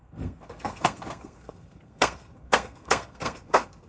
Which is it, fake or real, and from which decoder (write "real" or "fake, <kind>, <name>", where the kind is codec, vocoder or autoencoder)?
fake, codec, SNAC